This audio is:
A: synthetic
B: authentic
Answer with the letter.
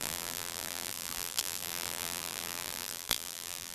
A